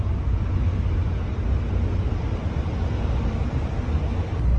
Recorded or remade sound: recorded